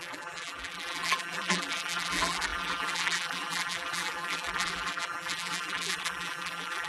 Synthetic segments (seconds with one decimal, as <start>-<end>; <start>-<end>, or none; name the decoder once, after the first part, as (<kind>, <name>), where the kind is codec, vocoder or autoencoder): 0.0-6.9 (vocoder, BigVGAN v2)